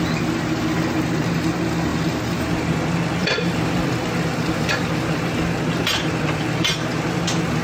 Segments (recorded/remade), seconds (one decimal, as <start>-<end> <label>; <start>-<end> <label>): 0.0-1.9 recorded; 1.9-2.4 remade; 2.4-3.2 recorded; 3.2-5.4 remade; 5.4-7.6 recorded